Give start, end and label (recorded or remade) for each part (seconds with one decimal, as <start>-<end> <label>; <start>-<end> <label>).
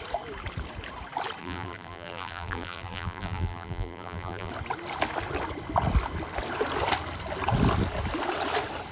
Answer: 0.0-1.4 recorded; 1.4-4.5 remade; 4.5-8.9 recorded